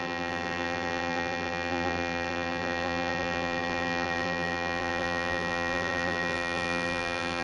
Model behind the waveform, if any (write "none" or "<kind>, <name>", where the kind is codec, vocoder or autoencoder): vocoder, BigVGAN v2